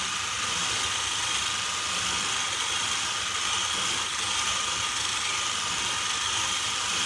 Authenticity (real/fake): fake